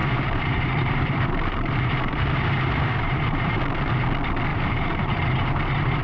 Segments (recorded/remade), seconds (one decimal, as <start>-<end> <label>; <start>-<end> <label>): 0.0-3.6 remade; 3.6-4.5 recorded; 4.5-6.0 remade